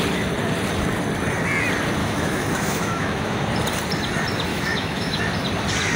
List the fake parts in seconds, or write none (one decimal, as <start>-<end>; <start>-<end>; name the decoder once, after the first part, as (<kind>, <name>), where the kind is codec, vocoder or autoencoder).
2.0-3.5 (autoencoder, DAC-VAE); 4.5-5.2